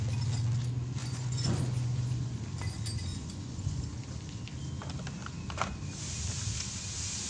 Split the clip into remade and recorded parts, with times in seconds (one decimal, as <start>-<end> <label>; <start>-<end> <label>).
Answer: 0.0-1.0 recorded; 1.0-2.4 remade; 2.4-3.1 recorded; 3.1-4.0 remade; 4.0-7.3 recorded